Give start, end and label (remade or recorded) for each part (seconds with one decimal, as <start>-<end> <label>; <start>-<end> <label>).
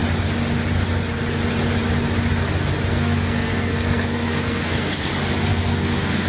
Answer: 0.0-2.9 recorded; 2.9-5.1 remade; 5.1-5.5 recorded; 5.5-6.3 remade